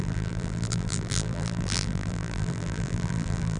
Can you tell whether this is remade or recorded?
remade